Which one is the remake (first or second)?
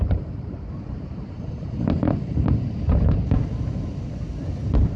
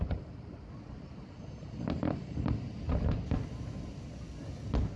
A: first